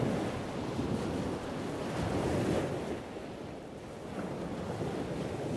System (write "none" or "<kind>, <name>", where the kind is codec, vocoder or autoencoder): none